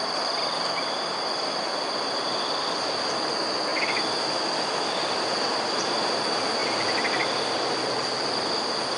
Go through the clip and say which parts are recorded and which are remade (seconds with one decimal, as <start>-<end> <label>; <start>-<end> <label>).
0.0-9.0 recorded